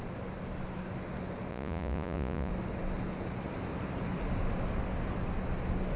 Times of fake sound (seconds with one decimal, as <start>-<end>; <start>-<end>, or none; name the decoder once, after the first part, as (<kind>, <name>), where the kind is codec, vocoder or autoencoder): 1.5-2.5 (vocoder, Vocos)

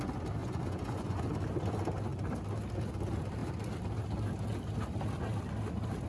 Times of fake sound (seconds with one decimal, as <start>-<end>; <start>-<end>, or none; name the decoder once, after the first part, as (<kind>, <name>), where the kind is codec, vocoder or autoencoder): 0.4-1.3 (vocoder, Vocos)

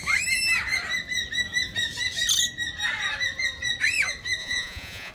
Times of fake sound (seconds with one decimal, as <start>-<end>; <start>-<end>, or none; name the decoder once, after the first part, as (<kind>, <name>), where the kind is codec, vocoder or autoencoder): 4.4-5.1 (vocoder, Vocos)

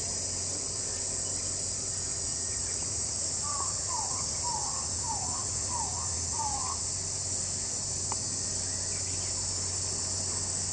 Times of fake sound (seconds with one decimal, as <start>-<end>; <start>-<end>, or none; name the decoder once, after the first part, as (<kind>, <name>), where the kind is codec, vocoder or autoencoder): 2.1-6.8 (vocoder, Vocos)